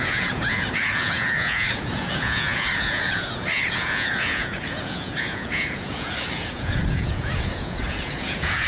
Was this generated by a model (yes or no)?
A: yes